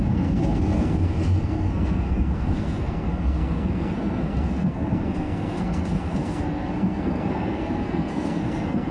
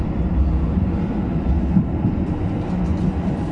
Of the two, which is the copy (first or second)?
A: first